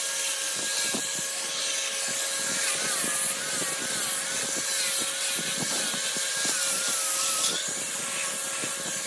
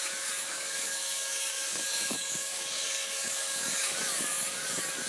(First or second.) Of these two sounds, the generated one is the second